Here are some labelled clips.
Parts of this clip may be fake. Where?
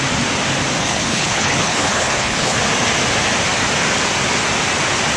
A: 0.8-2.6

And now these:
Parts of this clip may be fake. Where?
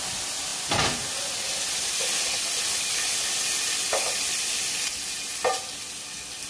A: none